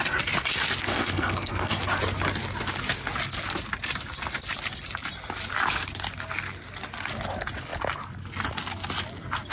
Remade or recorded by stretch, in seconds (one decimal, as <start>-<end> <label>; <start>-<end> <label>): 0.0-0.9 recorded; 0.9-1.8 remade; 1.8-9.5 recorded

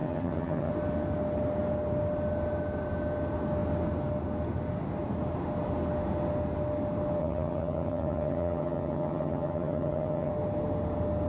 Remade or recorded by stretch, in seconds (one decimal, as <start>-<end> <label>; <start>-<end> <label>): 0.0-0.7 remade; 0.7-7.2 recorded; 7.2-10.3 remade; 10.3-11.3 recorded